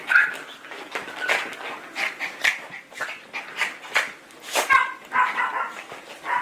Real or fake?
real